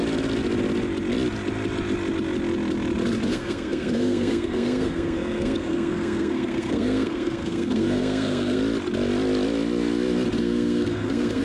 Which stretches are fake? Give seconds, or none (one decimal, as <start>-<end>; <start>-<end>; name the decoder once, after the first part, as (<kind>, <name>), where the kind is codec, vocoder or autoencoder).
3.3-8.6 (codec, SNAC); 10.4-11.4